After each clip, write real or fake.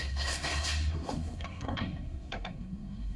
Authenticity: fake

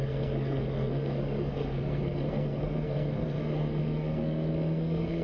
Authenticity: fake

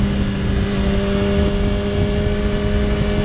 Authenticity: real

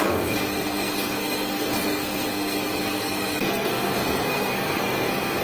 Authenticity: fake